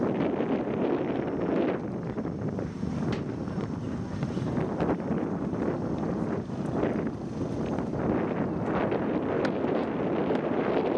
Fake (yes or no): no